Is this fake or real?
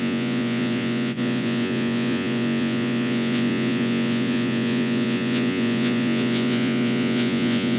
fake